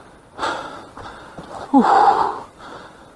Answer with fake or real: real